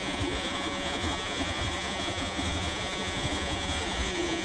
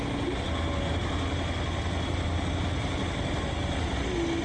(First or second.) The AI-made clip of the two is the first